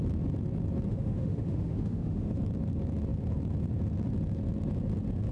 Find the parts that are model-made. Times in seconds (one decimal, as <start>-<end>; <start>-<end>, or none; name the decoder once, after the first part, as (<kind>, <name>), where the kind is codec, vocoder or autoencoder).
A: 0.9-2.4 (autoencoder, DAC-VAE)

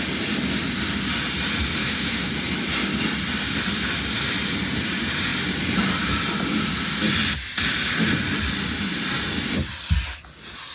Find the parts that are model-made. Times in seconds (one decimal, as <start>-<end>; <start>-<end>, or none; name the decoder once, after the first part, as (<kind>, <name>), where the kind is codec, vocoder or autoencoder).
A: 1.8-2.3 (autoencoder, DAC-VAE)

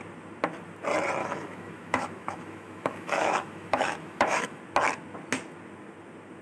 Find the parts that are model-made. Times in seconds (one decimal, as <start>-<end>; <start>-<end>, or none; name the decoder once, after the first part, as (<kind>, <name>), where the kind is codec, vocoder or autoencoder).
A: 1.2-4.6 (autoencoder, DAC-VAE)